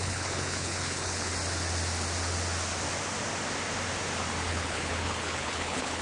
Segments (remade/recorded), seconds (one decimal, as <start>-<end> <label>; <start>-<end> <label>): 0.0-1.3 remade; 1.3-4.5 recorded; 4.5-6.0 remade